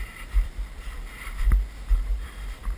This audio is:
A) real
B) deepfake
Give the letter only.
B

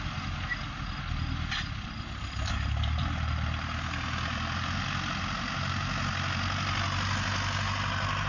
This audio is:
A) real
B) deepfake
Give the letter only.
A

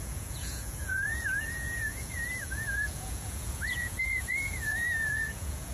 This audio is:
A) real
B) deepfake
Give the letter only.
B